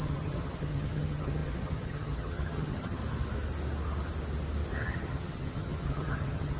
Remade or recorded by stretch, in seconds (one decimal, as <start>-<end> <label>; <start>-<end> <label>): 0.0-3.0 remade; 3.0-4.7 recorded; 4.7-6.6 remade